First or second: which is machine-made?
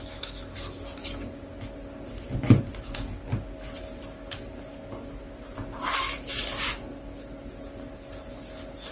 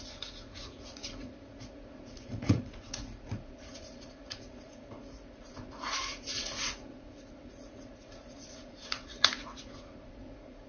second